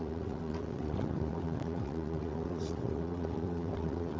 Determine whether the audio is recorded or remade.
remade